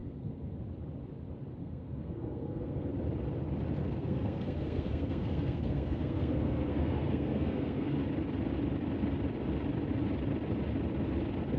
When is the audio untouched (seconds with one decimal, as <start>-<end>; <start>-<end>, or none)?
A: 0.6-1.6; 2.9-3.8; 7.9-11.6